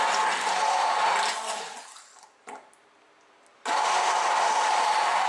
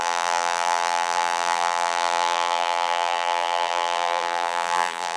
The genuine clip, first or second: first